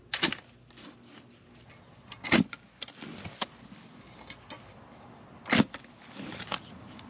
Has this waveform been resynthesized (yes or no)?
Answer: no